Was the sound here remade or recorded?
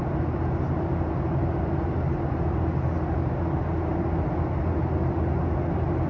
recorded